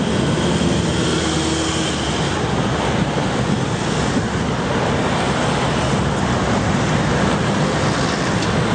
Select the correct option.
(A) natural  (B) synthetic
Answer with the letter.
A